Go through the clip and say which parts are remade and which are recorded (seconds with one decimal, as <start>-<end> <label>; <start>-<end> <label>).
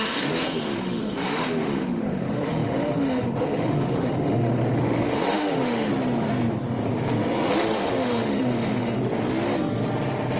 0.0-5.9 remade; 5.9-7.5 recorded; 7.5-9.0 remade; 9.0-10.4 recorded